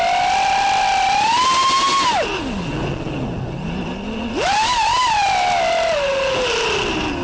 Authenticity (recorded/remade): recorded